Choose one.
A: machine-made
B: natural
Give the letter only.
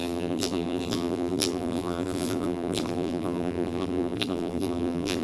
A